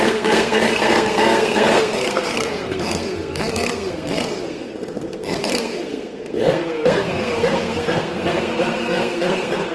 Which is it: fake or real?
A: fake